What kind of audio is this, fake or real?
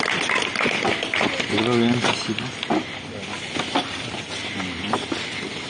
real